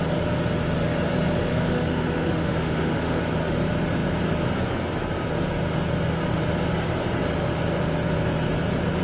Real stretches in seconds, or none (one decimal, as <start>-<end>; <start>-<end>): 0.0-1.5; 3.2-9.0